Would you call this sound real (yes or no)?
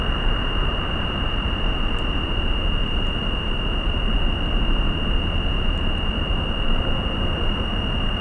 no